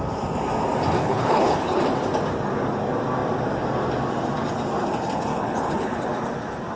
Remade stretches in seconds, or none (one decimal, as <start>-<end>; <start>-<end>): 1.0-1.8; 5.3-6.0